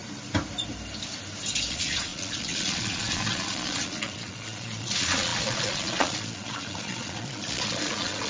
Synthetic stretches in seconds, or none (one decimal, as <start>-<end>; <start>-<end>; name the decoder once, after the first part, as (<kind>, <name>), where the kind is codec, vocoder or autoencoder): 1.7-8.3 (vocoder, Vocos)